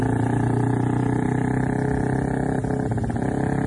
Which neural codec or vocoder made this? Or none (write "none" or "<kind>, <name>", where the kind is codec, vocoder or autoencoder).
none